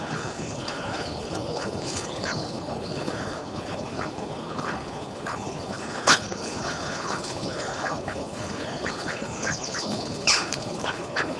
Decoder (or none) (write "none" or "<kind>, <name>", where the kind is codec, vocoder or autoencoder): codec, HILCodec